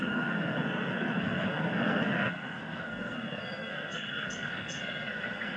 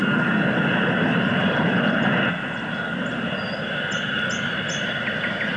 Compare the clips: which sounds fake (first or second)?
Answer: first